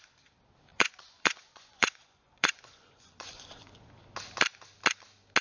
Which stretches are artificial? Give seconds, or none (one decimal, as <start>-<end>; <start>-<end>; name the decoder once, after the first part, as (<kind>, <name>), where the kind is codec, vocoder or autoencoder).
0.7-3.9 (vocoder, Vocos)